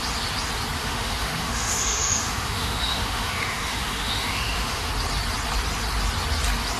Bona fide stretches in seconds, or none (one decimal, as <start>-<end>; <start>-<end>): 0.0-0.8; 4.9-6.8